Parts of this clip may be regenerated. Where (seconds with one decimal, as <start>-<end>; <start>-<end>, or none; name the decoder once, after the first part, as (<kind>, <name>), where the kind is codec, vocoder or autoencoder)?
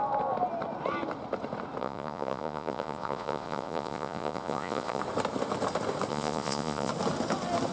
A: 1.8-5.0 (vocoder, Vocos); 6.1-6.9